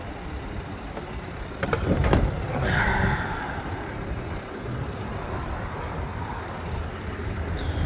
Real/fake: real